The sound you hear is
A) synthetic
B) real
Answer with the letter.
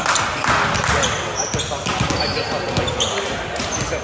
B